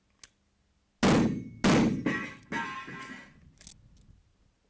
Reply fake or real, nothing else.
real